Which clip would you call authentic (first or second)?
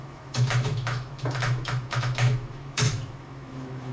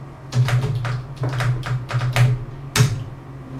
second